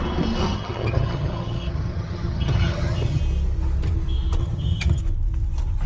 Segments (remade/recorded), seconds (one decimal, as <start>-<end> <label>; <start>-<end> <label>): 0.0-0.4 recorded; 0.4-3.2 remade; 3.2-4.4 recorded; 4.4-5.0 remade; 5.0-5.9 recorded